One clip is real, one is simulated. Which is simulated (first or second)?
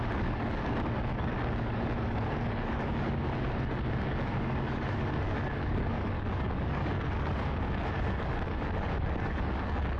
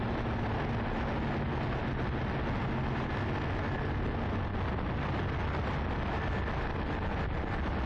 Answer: first